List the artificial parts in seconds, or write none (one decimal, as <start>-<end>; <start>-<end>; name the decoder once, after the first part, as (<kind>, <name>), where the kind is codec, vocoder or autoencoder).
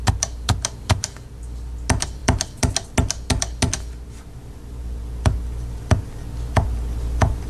none